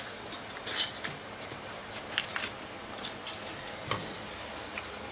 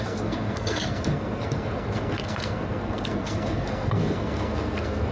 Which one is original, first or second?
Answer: first